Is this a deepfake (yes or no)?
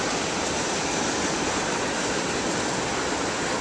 no